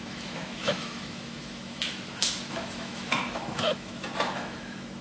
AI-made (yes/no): yes